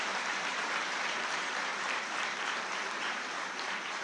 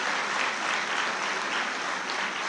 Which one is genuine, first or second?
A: second